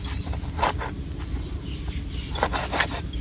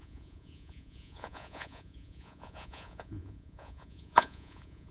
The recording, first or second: first